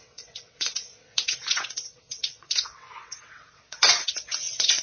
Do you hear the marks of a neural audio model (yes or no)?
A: yes